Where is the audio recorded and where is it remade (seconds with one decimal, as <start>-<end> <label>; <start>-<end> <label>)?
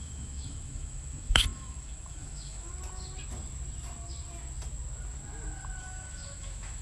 0.0-2.7 remade; 2.7-5.8 recorded; 5.8-6.8 remade